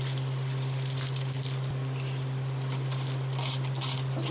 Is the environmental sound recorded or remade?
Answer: recorded